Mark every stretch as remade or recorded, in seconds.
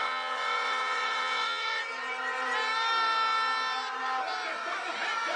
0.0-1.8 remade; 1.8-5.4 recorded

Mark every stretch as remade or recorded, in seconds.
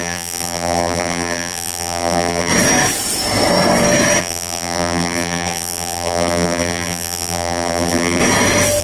0.0-2.5 remade; 2.5-4.2 recorded; 4.2-8.2 remade; 8.2-8.8 recorded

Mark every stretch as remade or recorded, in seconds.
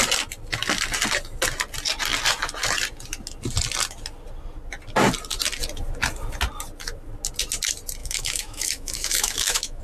0.0-8.0 recorded; 8.0-9.8 remade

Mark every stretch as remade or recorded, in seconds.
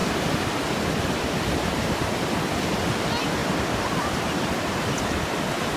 0.0-2.7 remade; 2.7-3.4 recorded; 3.4-4.7 remade; 4.7-5.8 recorded